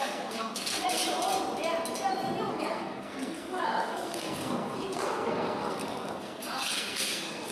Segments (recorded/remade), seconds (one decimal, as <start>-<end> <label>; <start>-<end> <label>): 0.0-1.0 remade; 1.0-2.5 recorded; 2.5-7.5 remade